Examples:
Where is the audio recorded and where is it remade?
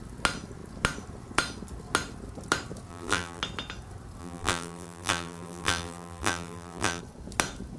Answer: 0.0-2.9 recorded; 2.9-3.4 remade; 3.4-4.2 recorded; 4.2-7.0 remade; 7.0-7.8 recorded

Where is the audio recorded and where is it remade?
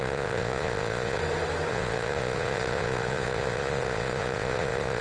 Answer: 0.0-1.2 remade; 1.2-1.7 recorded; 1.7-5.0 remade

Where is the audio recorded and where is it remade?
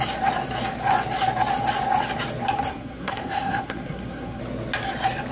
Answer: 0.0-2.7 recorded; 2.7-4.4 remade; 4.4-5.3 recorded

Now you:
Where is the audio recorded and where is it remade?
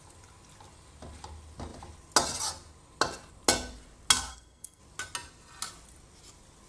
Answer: 0.0-4.3 recorded; 4.3-4.8 remade; 4.8-6.7 recorded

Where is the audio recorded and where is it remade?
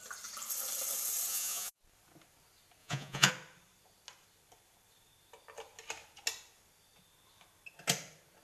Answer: 0.0-1.3 recorded; 1.3-1.8 remade; 1.8-2.8 recorded; 2.8-3.3 remade; 3.3-8.4 recorded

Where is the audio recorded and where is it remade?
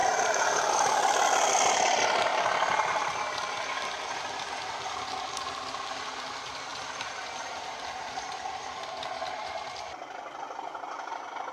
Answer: 0.0-1.0 remade; 1.0-6.7 recorded; 6.7-8.5 remade; 8.5-11.5 recorded